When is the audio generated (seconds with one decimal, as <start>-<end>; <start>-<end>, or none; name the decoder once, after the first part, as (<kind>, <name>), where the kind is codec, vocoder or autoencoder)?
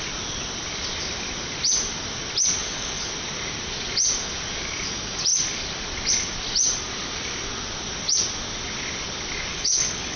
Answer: 2.6-3.1 (codec, HILCodec); 9.5-10.2